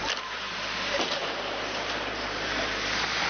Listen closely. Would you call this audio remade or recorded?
remade